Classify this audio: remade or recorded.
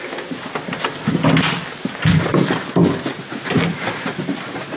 recorded